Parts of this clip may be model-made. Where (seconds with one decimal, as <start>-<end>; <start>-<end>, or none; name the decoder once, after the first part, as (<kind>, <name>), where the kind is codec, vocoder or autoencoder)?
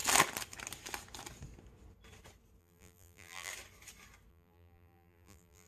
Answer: 2.6-3.5 (vocoder, BigVGAN v2); 4.3-5.7